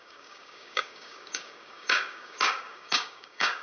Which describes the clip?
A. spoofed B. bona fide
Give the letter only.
A